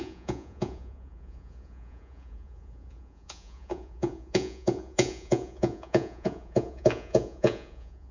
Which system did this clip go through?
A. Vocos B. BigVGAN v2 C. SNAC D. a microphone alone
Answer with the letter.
A